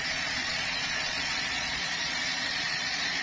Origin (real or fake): fake